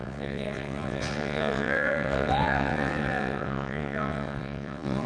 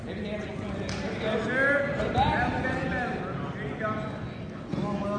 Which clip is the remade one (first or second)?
first